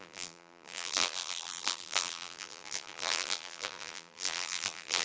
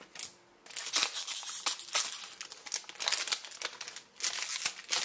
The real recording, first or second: second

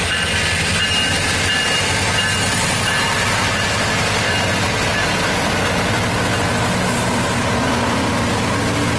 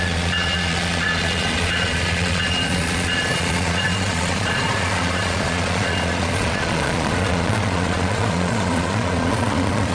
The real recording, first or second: first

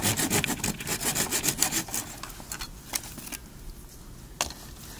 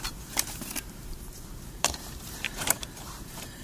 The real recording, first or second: first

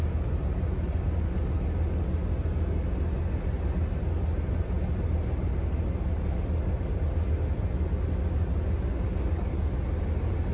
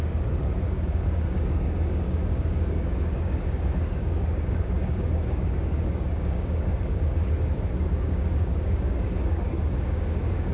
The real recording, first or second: first